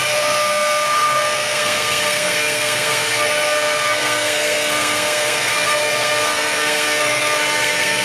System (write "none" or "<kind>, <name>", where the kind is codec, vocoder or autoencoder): codec, SNAC